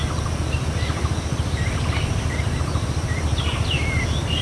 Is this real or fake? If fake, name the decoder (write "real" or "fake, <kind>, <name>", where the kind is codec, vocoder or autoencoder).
real